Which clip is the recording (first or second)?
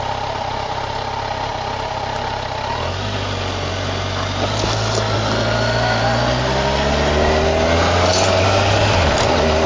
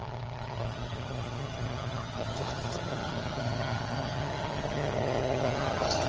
first